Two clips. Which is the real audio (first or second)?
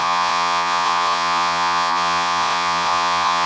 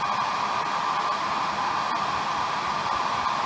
second